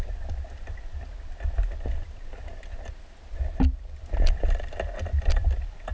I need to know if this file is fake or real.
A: real